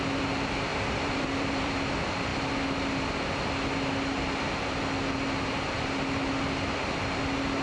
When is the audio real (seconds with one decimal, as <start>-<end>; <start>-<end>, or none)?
0.0-0.7; 1.7-7.6